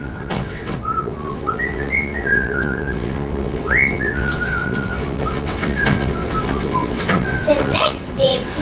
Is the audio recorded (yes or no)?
no